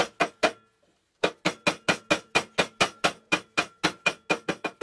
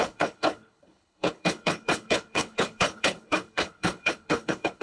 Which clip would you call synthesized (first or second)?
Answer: second